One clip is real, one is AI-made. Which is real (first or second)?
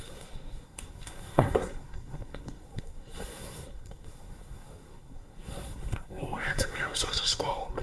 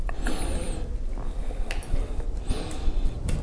second